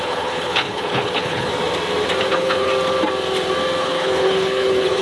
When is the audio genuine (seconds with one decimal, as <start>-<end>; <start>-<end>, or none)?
1.5-2.3; 2.7-3.8